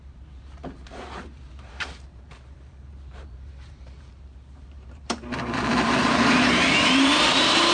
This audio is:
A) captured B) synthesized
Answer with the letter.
B